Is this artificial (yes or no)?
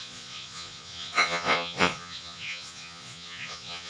yes